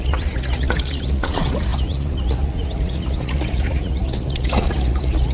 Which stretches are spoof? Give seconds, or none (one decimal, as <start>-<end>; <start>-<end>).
0.0-5.3